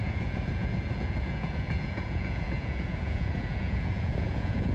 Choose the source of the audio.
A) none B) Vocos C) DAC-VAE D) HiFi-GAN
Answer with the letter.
B